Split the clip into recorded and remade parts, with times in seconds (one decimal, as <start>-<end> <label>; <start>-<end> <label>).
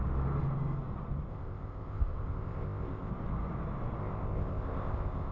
0.0-1.3 recorded; 1.3-3.1 remade; 3.1-4.0 recorded; 4.0-5.3 remade